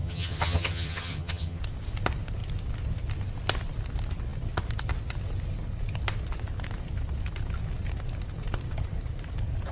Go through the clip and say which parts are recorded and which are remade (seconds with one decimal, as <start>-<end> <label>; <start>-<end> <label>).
0.0-1.6 remade; 1.6-9.7 recorded